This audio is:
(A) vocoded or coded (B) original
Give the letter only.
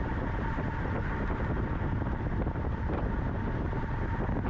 B